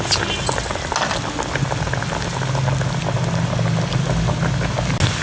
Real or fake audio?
real